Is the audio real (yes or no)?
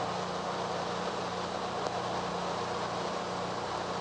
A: yes